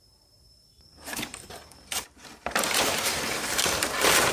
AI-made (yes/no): yes